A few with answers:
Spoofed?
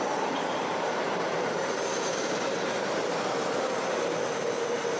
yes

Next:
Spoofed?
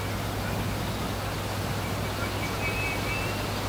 no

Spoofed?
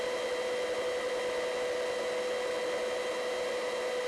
no